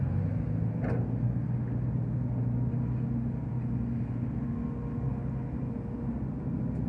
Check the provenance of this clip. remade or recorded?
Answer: recorded